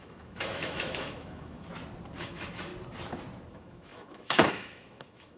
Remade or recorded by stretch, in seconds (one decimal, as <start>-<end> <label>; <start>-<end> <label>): 0.0-1.7 remade; 1.7-2.2 recorded; 2.2-2.7 remade; 2.7-3.5 recorded; 3.5-5.4 remade